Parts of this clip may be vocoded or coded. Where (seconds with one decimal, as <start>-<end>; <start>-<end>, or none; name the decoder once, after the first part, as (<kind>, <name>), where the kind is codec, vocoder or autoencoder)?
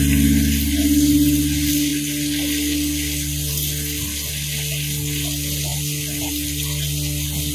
none